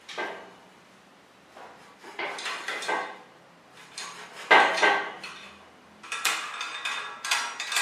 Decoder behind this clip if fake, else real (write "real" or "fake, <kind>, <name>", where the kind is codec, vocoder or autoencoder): fake, vocoder, BigVGAN v2